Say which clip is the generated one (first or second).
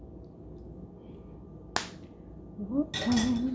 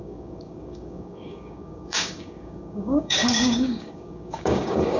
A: second